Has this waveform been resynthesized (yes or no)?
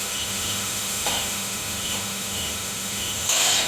yes